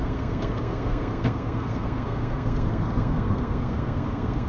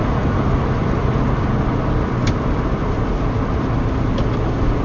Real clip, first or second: second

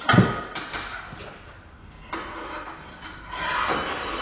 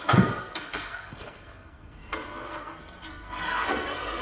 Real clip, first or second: first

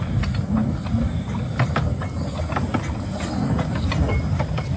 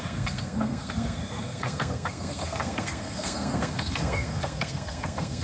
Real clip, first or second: first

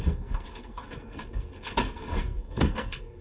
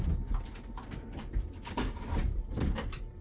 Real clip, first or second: second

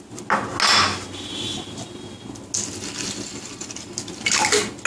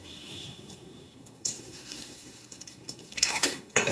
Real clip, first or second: first